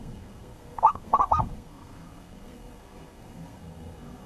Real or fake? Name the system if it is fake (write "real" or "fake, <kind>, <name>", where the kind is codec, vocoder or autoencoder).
fake, codec, SNAC